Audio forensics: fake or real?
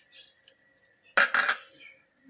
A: real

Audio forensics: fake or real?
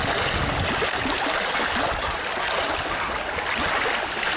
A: real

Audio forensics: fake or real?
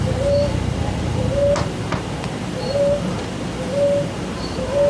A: real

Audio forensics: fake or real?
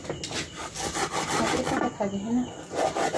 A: real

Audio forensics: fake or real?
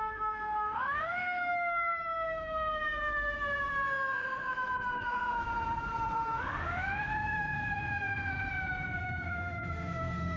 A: fake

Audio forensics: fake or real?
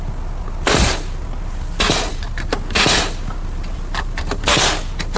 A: real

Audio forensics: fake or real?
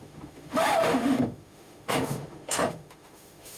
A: fake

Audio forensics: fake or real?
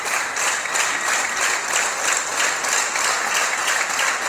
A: real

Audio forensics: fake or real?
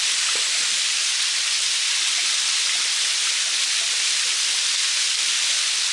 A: real